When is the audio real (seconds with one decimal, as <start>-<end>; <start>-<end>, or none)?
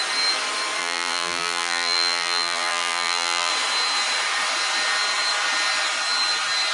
0.0-0.8; 3.5-6.7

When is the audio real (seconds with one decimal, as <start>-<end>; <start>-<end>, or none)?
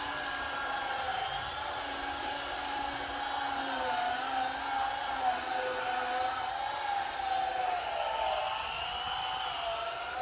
0.0-10.2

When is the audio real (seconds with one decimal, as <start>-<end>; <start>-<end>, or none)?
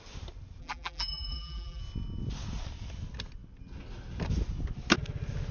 0.0-0.6; 1.8-5.5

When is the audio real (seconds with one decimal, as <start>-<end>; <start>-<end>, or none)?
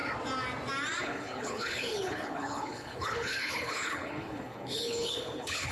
0.0-1.0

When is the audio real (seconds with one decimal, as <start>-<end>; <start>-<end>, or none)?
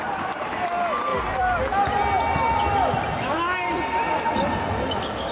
0.0-5.3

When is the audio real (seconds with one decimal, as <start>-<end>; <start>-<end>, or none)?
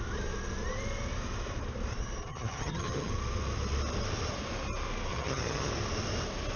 0.0-2.3; 3.1-5.1; 5.7-6.6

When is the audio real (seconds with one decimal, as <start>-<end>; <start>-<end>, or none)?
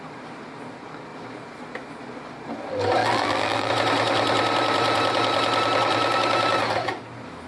0.0-3.0; 3.7-7.5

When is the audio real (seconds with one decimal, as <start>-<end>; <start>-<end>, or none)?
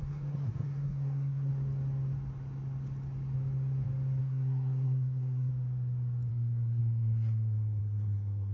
1.5-4.2; 5.5-6.3